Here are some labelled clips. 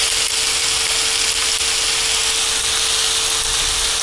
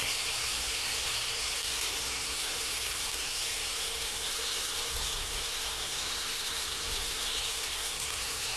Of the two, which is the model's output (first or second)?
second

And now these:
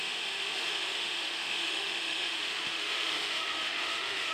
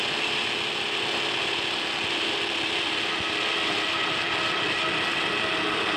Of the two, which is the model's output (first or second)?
first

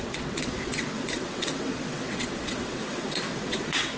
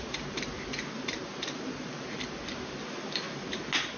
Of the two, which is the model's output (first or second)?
first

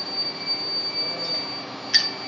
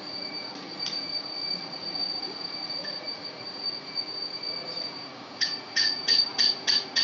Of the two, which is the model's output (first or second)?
second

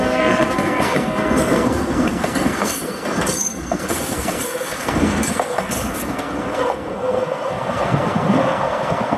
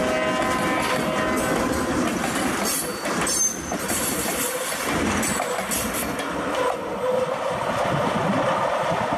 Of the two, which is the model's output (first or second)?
first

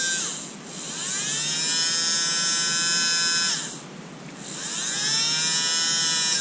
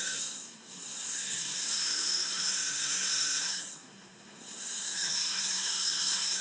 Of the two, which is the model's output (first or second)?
second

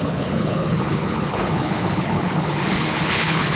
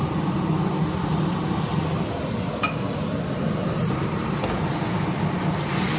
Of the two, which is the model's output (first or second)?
first